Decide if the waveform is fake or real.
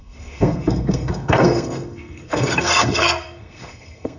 fake